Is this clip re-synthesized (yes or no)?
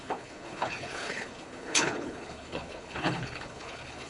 yes